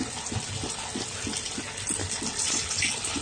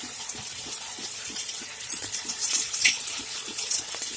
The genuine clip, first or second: first